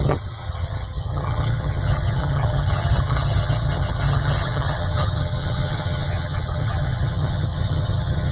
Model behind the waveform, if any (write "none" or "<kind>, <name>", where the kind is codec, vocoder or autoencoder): vocoder, HiFi-GAN